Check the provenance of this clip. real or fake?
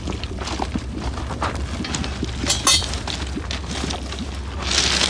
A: real